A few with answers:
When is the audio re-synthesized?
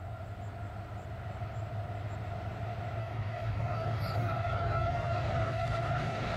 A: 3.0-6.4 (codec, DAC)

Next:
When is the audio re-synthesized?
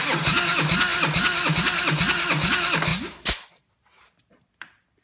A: none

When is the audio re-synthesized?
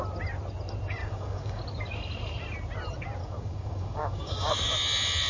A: 1.0-1.6 (codec, DAC); 3.2-4.5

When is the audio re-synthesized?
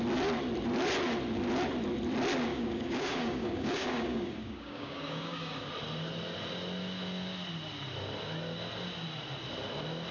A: 2.5-5.7 (codec, DAC)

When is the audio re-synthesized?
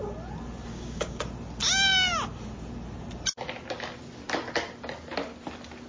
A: 0.7-1.3 (codec, DAC)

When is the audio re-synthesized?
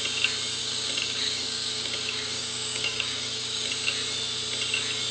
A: 0.6-3.7 (codec, DAC)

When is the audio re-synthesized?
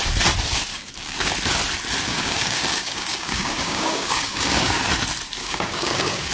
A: 0.7-1.3 (codec, DAC); 2.1-4.8; 5.4-6.3